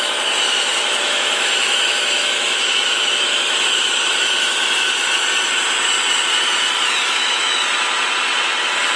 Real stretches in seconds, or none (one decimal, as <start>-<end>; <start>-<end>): 0.0-0.7; 5.1-7.0; 7.6-9.0